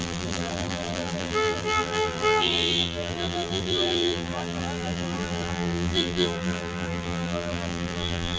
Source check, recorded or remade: remade